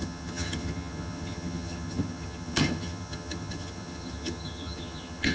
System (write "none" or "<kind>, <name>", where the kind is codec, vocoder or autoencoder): vocoder, HiFi-GAN